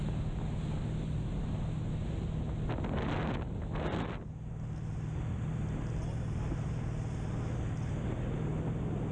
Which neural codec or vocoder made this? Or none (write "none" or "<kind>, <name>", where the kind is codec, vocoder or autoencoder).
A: none